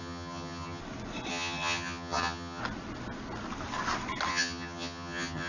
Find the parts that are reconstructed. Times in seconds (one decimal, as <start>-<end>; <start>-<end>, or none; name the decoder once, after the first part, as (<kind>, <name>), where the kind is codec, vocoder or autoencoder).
0.0-0.8 (vocoder, HiFi-GAN); 1.3-2.6; 4.3-5.5